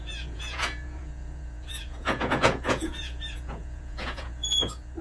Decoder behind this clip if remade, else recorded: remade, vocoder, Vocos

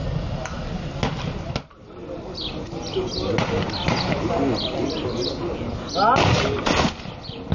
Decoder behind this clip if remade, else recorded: recorded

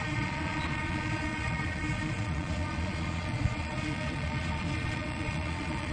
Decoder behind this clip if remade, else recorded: remade, vocoder, Vocos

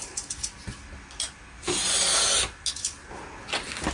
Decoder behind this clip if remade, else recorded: recorded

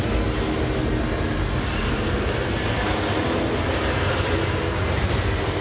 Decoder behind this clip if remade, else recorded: recorded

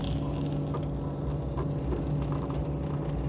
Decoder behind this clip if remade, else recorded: recorded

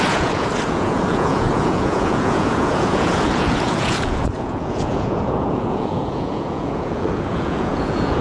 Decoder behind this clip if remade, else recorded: remade, vocoder, Vocos